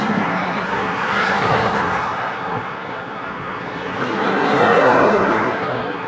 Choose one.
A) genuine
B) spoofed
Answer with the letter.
B